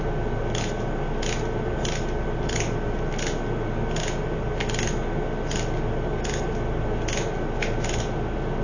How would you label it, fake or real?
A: real